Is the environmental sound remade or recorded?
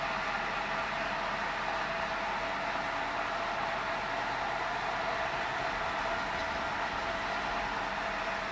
recorded